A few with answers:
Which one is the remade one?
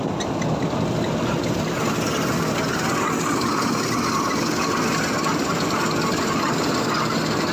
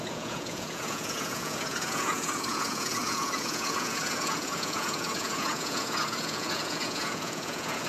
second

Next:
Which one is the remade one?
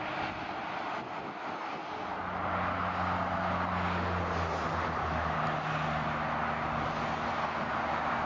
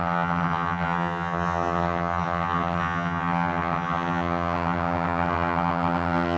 second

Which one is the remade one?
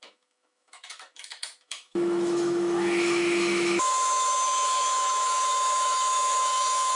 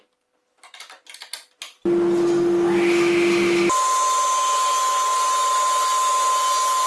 first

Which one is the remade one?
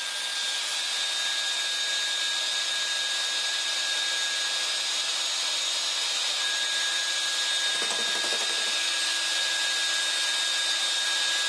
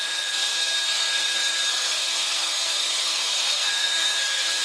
second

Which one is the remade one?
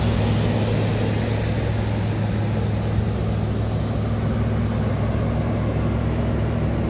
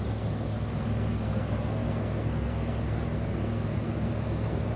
second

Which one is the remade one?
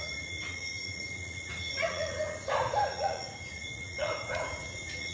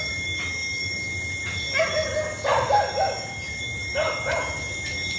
first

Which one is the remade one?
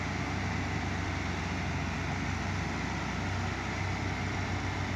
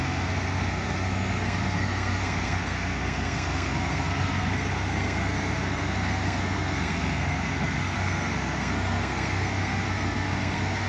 second